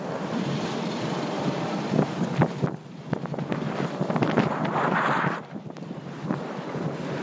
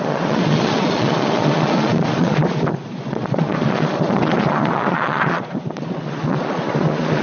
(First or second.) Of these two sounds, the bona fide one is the first